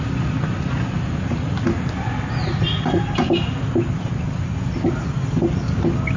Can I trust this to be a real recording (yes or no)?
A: yes